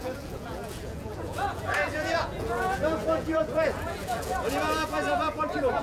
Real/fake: fake